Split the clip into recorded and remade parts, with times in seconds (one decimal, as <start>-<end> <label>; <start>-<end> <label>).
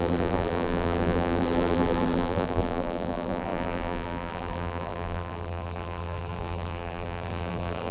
0.0-7.9 remade